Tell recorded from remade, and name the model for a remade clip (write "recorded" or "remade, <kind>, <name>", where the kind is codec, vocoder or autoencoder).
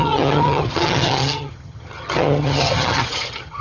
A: remade, vocoder, HiFi-GAN